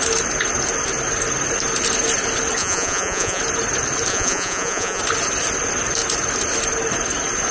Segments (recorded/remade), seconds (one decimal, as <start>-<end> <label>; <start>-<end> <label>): 0.0-2.6 recorded; 2.6-3.4 remade; 3.4-4.1 recorded; 4.1-5.0 remade; 5.0-7.5 recorded